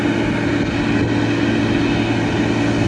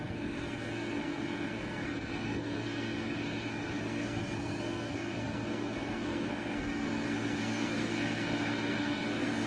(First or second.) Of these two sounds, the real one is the first